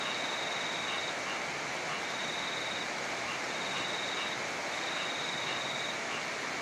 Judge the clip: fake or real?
real